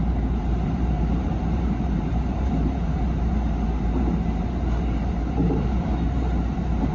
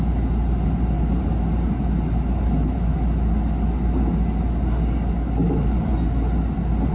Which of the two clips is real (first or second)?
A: second